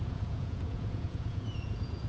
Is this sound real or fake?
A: fake